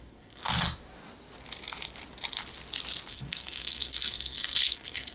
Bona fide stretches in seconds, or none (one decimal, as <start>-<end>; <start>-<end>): 0.4-3.1